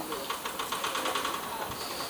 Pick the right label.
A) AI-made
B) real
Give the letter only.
B